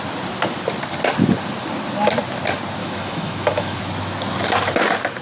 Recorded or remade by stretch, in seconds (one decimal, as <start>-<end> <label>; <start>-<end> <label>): 0.0-2.8 recorded; 2.8-3.8 remade; 3.8-5.2 recorded